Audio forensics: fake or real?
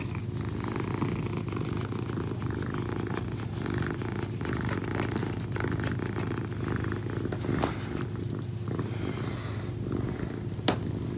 real